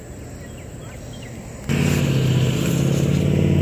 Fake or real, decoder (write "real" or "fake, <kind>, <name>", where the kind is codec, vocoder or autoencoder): real